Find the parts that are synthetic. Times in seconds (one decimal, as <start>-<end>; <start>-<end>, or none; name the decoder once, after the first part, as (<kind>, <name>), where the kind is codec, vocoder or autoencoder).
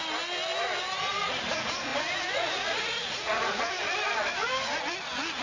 1.5-3.6 (vocoder, Vocos)